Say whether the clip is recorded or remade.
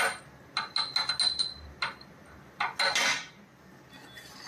recorded